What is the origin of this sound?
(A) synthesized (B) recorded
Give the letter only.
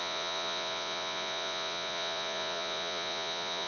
A